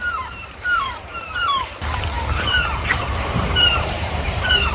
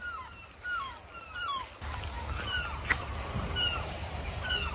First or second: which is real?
second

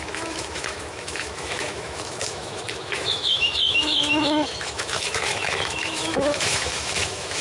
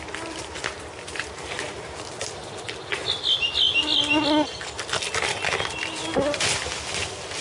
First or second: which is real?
second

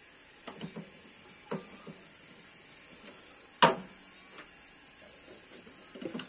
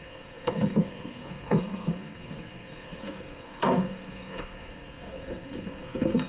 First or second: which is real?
first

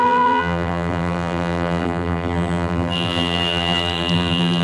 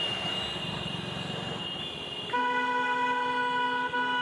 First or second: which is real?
second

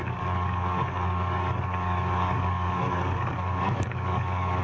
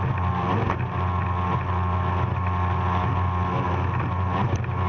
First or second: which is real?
second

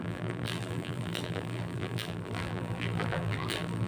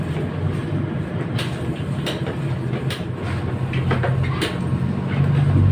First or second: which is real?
second